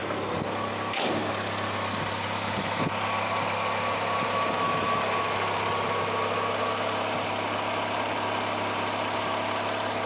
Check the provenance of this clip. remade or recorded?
recorded